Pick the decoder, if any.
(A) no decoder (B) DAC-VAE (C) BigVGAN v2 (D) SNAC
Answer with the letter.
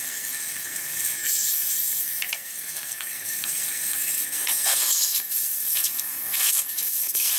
D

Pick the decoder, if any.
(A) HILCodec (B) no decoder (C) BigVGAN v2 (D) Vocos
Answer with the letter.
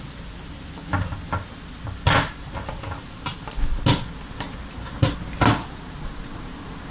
B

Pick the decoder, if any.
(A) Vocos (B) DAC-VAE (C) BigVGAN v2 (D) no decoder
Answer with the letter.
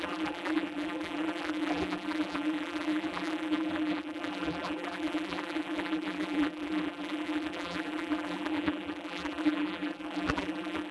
C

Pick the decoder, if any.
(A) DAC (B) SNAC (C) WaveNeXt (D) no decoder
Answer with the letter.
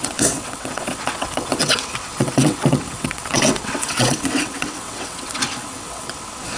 C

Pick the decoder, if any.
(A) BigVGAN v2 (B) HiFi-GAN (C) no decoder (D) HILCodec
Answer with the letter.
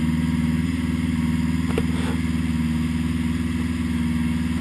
C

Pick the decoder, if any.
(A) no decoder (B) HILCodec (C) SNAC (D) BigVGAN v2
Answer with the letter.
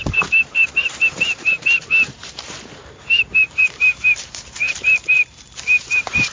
D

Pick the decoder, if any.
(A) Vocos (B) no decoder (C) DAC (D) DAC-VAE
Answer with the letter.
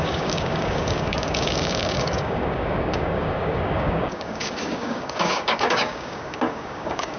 C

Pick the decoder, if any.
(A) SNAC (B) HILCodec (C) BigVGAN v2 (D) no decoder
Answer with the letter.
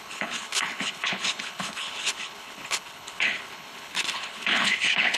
B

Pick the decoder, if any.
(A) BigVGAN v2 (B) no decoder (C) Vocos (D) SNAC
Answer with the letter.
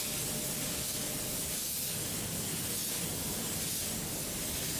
B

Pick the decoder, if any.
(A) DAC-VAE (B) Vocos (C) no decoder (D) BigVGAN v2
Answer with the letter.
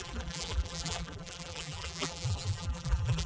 D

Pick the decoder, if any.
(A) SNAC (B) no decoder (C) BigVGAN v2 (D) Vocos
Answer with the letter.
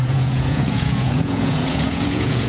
D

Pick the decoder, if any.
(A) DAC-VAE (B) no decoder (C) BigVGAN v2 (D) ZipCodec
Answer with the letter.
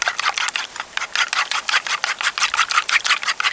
B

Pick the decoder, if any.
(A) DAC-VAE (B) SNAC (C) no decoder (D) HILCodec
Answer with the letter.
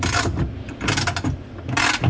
C